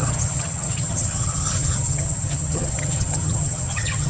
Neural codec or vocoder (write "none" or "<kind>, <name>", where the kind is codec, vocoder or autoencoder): vocoder, HiFi-GAN